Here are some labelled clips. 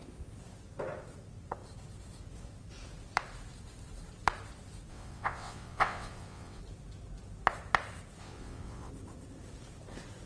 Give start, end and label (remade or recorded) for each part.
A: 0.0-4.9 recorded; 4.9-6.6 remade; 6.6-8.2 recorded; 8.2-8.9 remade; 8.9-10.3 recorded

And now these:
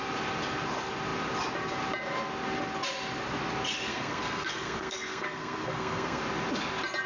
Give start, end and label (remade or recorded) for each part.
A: 0.0-3.9 recorded; 3.9-6.2 remade; 6.2-7.1 recorded

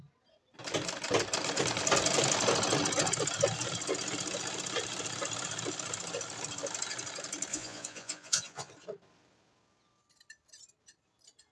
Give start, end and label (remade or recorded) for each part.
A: 0.0-7.5 recorded; 7.5-8.7 remade; 8.7-11.5 recorded

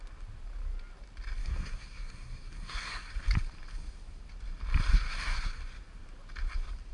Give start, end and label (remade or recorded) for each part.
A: 0.0-1.4 recorded; 1.4-3.1 remade; 3.1-4.9 recorded; 4.9-5.6 remade; 5.6-6.9 recorded

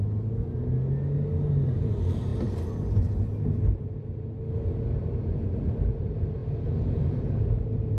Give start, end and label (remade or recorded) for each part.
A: 0.0-6.4 recorded; 6.4-7.4 remade; 7.4-8.0 recorded

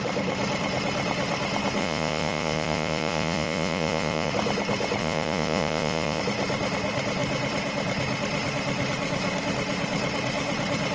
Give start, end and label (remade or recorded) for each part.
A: 0.0-1.8 recorded; 1.8-4.3 remade; 4.3-5.0 recorded; 5.0-6.2 remade; 6.2-10.9 recorded